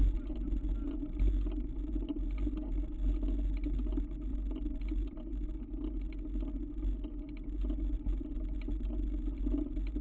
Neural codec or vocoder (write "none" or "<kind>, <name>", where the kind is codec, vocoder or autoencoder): none